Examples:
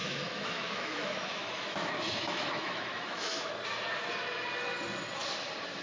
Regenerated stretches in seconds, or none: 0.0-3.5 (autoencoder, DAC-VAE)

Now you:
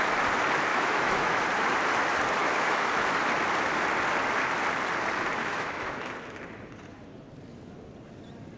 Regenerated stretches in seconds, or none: 0.7-1.4 (autoencoder, DAC-VAE); 2.4-2.9; 5.4-6.1

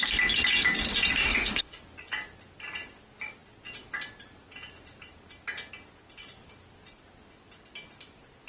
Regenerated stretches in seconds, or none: 1.2-1.8 (autoencoder, DAC-VAE)